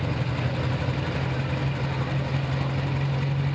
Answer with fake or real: real